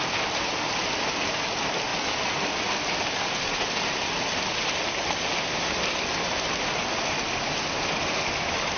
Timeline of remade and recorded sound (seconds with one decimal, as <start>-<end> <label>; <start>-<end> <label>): 0.0-8.8 recorded